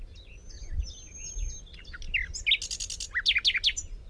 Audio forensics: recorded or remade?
recorded